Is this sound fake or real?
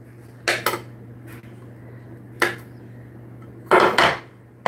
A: real